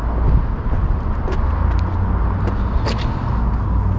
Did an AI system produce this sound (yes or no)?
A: no